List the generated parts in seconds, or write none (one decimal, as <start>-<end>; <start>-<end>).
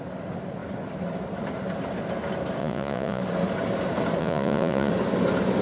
2.6-3.2; 4.2-4.9